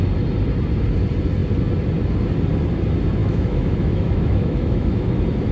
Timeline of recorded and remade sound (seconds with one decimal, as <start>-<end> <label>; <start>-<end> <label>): 0.0-3.2 recorded; 3.2-5.1 remade; 5.1-5.5 recorded